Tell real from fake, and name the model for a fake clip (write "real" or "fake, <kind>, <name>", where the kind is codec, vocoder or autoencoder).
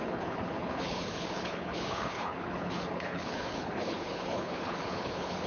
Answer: fake, codec, HILCodec